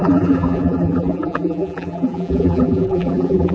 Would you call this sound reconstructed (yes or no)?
yes